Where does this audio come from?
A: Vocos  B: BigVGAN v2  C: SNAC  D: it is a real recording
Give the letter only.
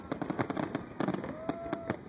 D